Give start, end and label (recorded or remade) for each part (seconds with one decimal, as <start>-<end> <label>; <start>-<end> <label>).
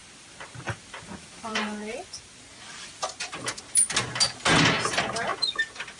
0.0-1.5 recorded; 1.5-2.2 remade; 2.2-6.0 recorded